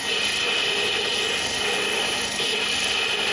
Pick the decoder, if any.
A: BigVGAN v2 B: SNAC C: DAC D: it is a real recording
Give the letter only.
D